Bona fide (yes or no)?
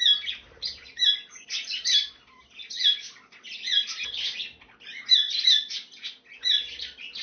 yes